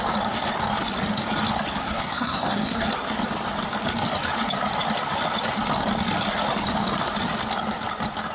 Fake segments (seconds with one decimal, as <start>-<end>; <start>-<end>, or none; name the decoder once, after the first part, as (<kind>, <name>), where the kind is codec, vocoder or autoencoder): 1.8-2.9 (codec, SNAC)